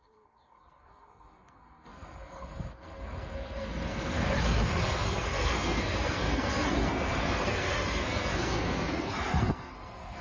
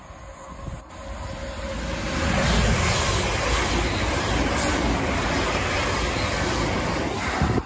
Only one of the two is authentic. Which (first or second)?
second